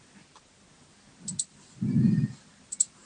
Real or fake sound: real